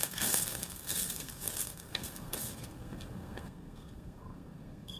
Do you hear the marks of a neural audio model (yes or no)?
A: yes